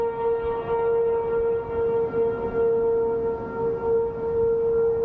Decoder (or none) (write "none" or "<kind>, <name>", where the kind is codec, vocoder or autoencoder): none